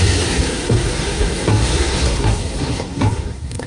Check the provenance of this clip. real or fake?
fake